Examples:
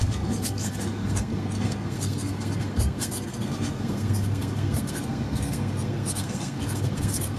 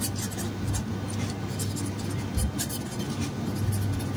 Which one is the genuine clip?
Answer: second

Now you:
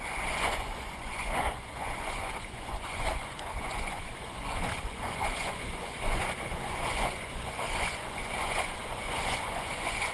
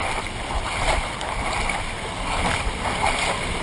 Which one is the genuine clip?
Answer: second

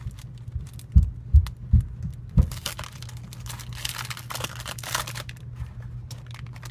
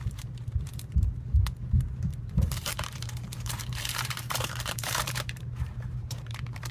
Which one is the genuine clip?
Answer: first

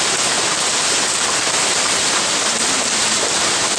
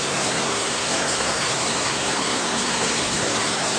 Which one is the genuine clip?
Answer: first